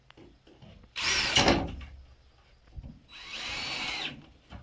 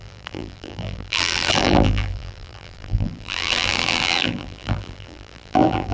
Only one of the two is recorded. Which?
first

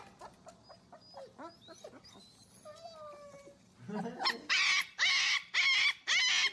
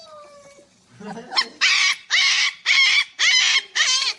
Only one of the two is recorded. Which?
first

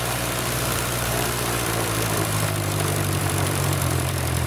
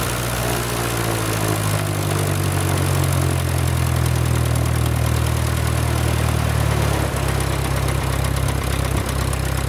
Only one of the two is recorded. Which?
second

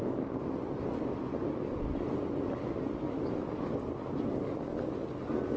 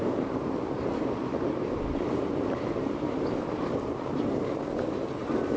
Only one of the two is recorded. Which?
first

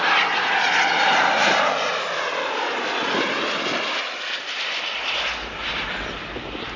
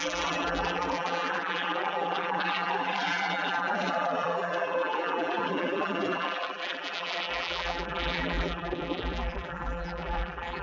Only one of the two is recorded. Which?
first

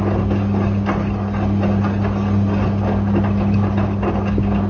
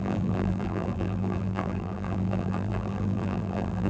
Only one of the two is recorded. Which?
first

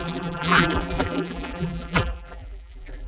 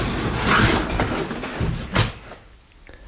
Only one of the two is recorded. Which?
second